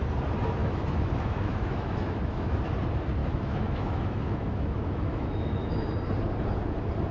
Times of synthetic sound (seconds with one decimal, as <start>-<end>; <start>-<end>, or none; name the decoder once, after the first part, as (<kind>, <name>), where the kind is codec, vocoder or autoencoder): 0.6-2.6 (autoencoder, DAC-VAE); 3.2-5.9